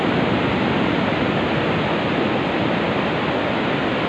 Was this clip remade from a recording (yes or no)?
no